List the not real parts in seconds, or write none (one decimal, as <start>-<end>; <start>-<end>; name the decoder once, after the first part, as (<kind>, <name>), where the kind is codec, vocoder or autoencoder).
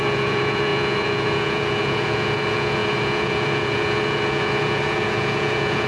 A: 0.0-5.9 (vocoder, Vocos)